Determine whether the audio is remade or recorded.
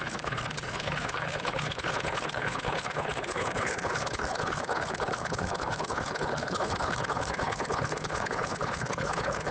remade